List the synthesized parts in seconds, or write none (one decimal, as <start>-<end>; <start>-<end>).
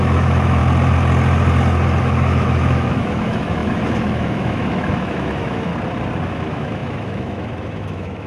0.0-0.6; 2.0-5.7; 6.3-8.3